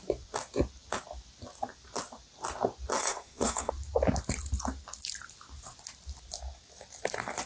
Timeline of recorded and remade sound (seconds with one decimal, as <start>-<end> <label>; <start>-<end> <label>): 0.0-3.0 recorded; 3.0-3.7 remade; 3.7-7.5 recorded